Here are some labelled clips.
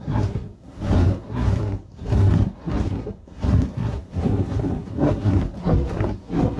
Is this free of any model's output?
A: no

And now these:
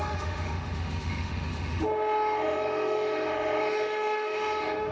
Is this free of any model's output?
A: no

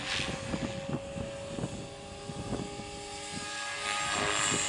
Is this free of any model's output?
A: yes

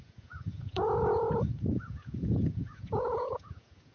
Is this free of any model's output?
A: no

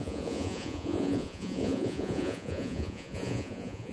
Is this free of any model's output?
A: no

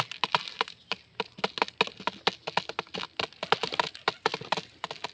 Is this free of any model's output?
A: yes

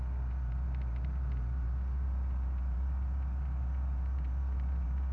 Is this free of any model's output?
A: yes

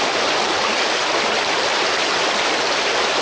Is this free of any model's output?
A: no